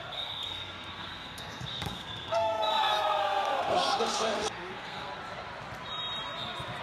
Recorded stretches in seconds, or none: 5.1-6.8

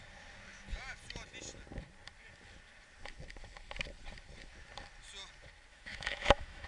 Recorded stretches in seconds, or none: 0.0-5.7

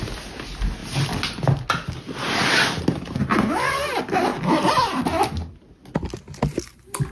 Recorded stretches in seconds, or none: 0.0-7.1

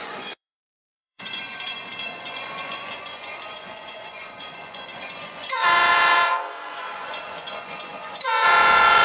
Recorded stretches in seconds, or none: none

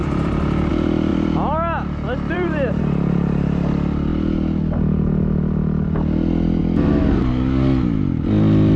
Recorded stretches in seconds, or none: 0.7-1.1; 2.8-4.1; 4.6-8.8

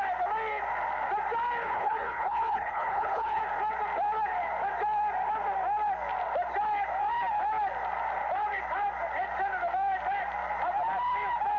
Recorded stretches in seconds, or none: 0.0-1.6; 3.4-11.6

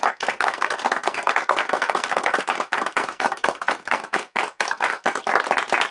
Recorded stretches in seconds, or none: 5.3-5.9

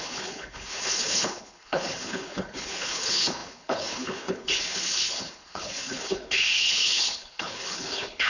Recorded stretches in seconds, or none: none